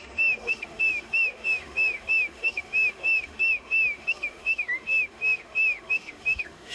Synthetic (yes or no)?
yes